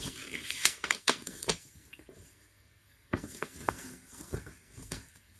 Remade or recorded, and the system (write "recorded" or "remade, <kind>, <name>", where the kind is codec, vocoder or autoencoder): remade, codec, SNAC